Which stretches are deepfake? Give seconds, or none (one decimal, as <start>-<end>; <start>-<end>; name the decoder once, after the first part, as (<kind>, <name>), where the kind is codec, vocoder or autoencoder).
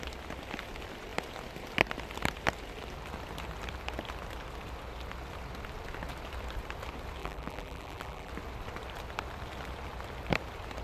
7.2-8.3 (vocoder, BigVGAN v2)